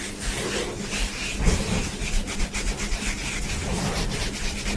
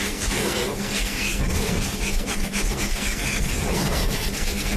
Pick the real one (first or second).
first